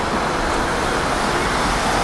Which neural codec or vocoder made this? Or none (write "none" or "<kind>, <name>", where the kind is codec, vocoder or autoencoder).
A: none